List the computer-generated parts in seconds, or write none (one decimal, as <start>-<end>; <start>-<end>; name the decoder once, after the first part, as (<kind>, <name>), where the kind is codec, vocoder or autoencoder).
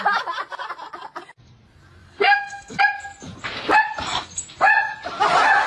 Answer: 2.0-2.8 (codec, SNAC)